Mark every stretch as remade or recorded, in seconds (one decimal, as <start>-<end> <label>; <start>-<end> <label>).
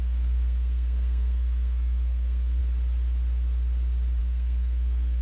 0.0-2.6 remade; 2.6-4.2 recorded; 4.2-5.2 remade